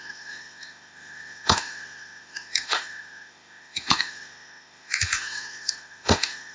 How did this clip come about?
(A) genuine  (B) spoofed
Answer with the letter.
B